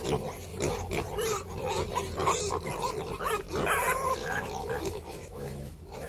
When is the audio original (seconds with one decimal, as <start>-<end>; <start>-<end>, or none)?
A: 0.0-4.2